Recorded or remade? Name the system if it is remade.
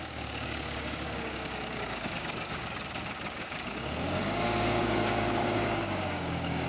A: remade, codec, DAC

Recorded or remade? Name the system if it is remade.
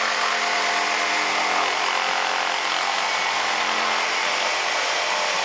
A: recorded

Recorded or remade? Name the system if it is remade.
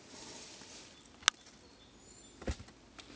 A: recorded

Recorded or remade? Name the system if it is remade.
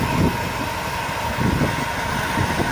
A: recorded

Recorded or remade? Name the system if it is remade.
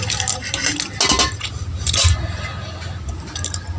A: recorded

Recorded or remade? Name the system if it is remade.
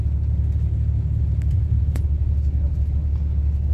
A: recorded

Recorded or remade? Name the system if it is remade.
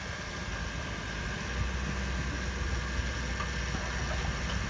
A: recorded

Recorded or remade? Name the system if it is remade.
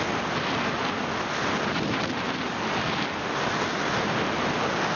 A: recorded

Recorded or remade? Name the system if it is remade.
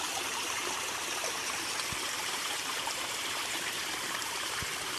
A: remade, vocoder, BigVGAN v2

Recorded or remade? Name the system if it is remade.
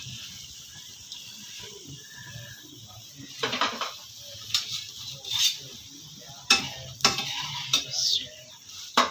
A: remade, vocoder, BigVGAN v2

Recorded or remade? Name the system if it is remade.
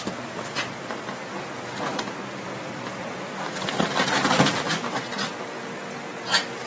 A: recorded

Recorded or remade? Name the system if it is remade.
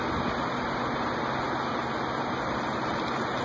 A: recorded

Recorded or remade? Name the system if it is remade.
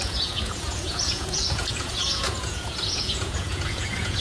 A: remade, vocoder, Vocos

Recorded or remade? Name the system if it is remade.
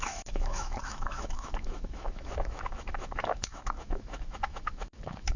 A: remade, autoencoder, DAC-VAE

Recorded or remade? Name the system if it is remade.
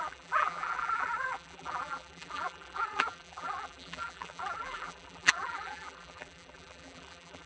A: remade, vocoder, BigVGAN v2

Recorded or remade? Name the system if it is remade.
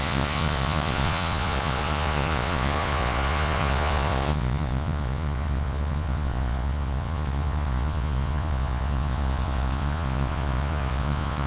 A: remade, vocoder, Vocos